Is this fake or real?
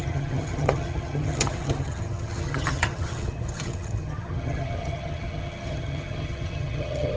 fake